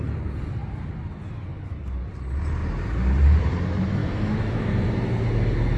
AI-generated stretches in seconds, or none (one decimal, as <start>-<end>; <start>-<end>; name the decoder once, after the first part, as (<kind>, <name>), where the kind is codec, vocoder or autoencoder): 4.0-4.7 (autoencoder, DAC-VAE)